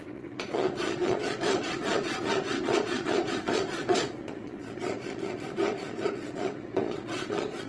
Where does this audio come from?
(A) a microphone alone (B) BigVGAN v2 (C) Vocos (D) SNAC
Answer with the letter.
C